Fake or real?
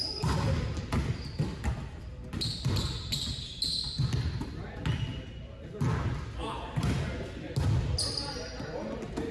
real